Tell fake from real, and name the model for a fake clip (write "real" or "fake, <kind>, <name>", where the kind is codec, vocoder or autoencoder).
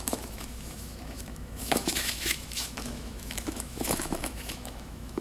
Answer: fake, autoencoder, DAC-VAE